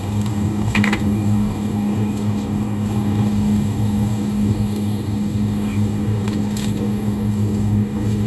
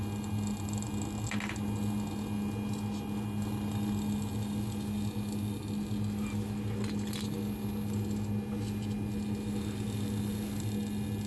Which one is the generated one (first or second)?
first